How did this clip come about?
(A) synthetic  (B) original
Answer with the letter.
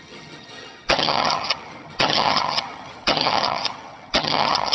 A